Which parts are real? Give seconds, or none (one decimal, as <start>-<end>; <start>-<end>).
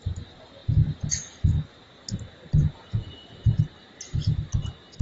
0.0-5.0